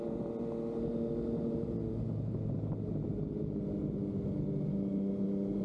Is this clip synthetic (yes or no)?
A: no